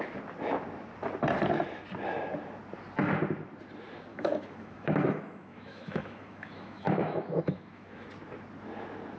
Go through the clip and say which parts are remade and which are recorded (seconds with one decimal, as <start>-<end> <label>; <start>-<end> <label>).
0.0-4.1 recorded; 4.1-8.1 remade; 8.1-9.2 recorded